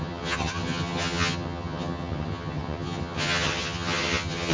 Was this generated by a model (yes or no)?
yes